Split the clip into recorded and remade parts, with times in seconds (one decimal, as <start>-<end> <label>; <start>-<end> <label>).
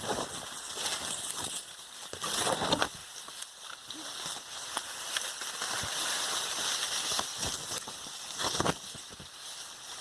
0.0-10.0 recorded